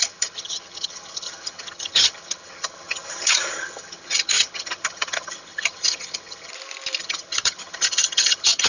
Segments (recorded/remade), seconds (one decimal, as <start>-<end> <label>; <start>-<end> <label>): 0.0-6.5 remade; 6.5-7.0 recorded; 7.0-8.7 remade